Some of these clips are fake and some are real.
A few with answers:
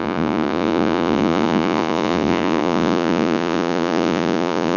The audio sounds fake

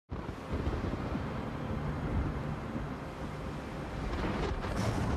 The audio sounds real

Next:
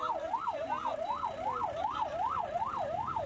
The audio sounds real